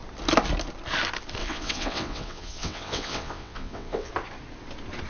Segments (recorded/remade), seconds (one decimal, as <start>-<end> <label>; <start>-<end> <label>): 0.0-1.4 recorded; 1.4-4.1 remade; 4.1-5.1 recorded